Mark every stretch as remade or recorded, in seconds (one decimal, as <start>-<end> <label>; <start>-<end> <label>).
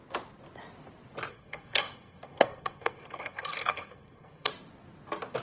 0.0-1.3 recorded; 1.3-4.5 remade; 4.5-5.4 recorded